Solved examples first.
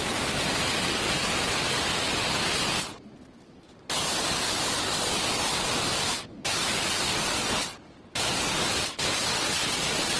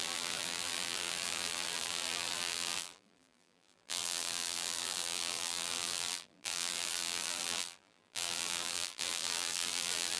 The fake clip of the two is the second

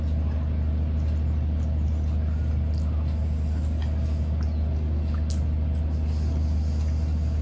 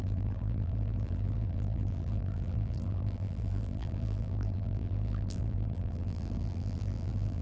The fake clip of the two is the second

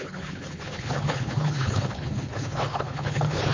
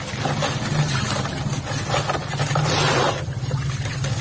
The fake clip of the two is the first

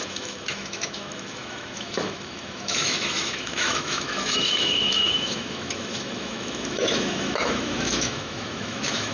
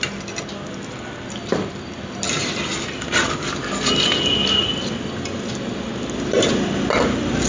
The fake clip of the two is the first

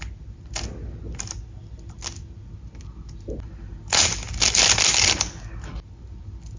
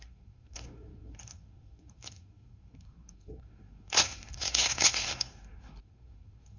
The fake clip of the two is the second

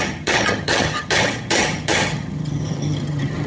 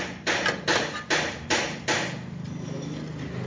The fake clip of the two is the first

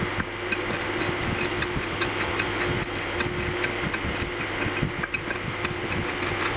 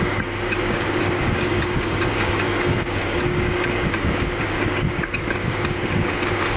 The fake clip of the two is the second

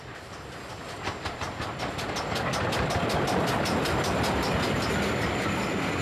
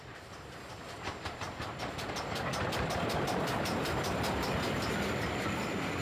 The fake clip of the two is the second